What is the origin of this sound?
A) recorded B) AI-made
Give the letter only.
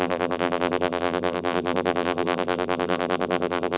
B